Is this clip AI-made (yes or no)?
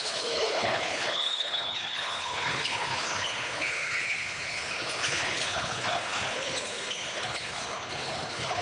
yes